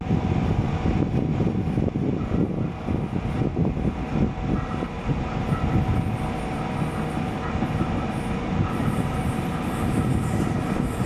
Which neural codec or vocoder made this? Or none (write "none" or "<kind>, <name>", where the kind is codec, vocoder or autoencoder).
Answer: none